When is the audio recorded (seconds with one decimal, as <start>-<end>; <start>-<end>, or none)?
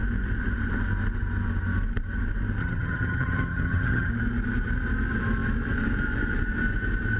0.0-2.6; 4.1-7.2